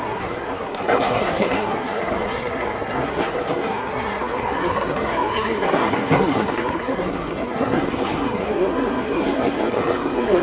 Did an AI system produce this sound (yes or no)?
yes